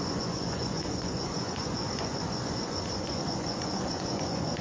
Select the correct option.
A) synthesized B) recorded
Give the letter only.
A